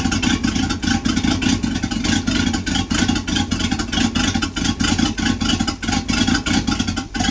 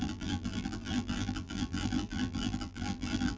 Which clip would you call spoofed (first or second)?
second